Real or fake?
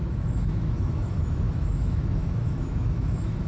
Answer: fake